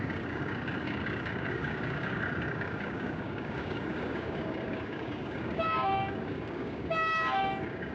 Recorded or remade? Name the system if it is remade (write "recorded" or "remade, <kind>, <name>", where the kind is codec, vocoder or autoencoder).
remade, codec, DAC